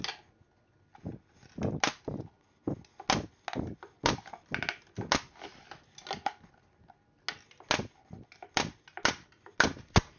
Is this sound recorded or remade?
recorded